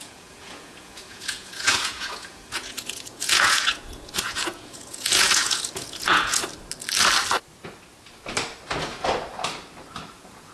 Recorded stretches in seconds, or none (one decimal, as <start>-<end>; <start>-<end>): 6.5-10.1